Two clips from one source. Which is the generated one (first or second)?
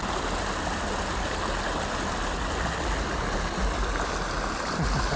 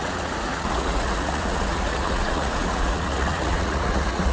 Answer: second